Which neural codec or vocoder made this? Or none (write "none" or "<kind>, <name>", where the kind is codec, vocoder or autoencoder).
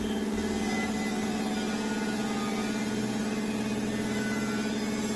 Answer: none